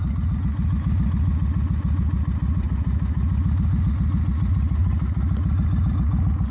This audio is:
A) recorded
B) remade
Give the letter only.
A